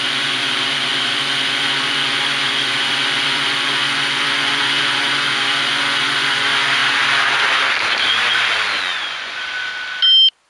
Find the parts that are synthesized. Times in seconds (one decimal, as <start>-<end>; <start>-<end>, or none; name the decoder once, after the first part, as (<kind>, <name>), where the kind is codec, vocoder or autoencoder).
0.0-6.8 (vocoder, Vocos); 8.8-9.7